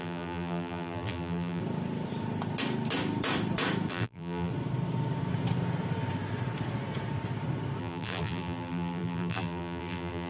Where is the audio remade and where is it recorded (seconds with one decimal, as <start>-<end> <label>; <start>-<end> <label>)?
0.0-1.6 remade; 1.6-3.9 recorded; 3.9-4.5 remade; 4.5-7.8 recorded; 7.8-10.3 remade